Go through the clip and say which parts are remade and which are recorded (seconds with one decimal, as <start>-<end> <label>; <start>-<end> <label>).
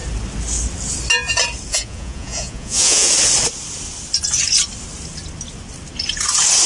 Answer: 0.0-1.7 recorded; 1.7-3.1 remade; 3.1-6.7 recorded